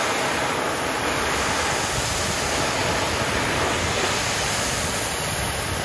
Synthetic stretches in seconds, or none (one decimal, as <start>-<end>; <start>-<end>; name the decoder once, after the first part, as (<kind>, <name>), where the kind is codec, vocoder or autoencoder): none